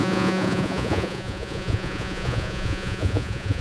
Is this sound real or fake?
fake